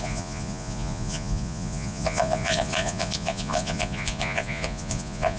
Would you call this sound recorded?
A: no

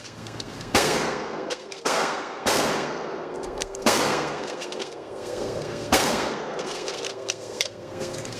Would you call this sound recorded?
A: no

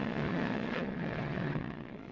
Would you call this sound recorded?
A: no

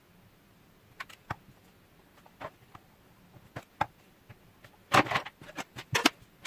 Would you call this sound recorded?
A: yes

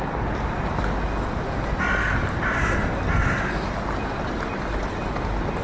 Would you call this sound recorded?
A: yes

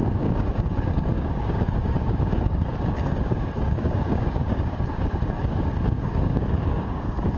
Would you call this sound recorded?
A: no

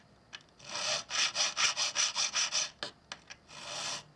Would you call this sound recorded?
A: yes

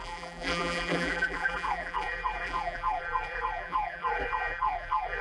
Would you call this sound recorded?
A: no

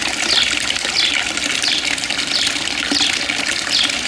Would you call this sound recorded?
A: yes